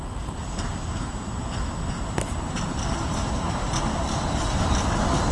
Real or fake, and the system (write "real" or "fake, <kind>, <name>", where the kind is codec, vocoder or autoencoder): real